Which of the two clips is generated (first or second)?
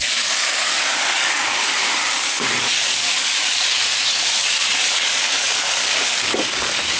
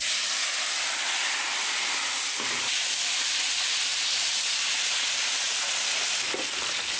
first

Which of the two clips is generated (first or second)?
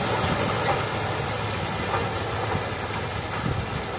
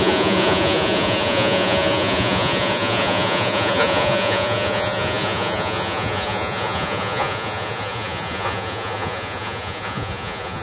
second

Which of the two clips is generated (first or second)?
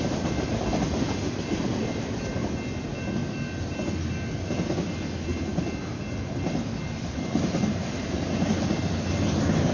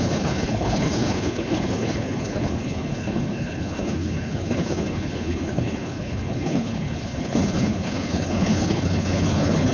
second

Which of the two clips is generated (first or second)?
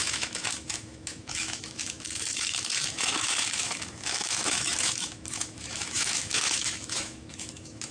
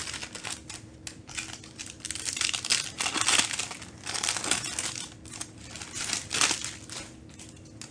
first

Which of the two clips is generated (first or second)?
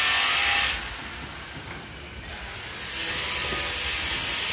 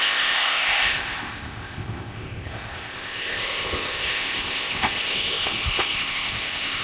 second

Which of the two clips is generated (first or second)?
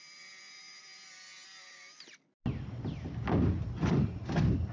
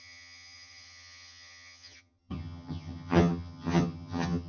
second